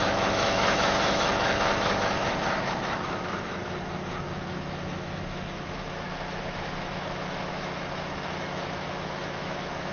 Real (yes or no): no